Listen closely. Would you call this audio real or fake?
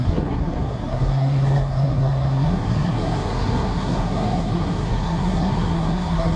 fake